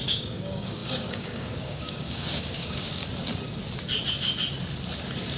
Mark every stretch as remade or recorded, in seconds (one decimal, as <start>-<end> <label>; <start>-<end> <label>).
0.0-3.0 remade; 3.0-5.4 recorded